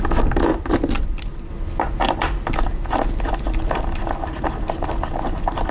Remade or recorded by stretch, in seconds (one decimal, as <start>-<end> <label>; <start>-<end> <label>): 0.0-5.7 recorded